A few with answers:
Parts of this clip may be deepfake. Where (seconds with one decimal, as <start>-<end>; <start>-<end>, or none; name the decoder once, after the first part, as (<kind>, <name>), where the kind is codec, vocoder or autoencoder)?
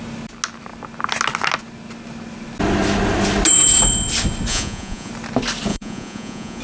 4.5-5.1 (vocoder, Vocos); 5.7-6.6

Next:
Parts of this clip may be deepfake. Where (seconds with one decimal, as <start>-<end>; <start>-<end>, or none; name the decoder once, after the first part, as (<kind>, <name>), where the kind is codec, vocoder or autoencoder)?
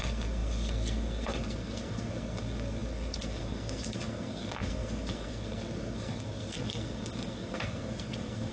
0.0-8.5 (codec, SNAC)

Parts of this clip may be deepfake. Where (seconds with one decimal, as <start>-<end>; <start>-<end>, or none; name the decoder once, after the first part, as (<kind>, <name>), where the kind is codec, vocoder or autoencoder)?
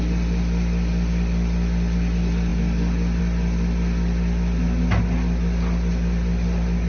none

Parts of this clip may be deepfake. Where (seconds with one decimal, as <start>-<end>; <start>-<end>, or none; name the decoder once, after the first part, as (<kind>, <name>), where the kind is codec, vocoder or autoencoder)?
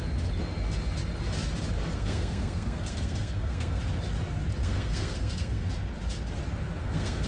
1.9-3.8 (codec, SNAC); 4.6-5.7; 6.8-7.3